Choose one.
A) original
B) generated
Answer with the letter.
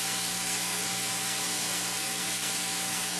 B